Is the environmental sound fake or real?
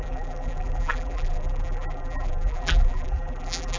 fake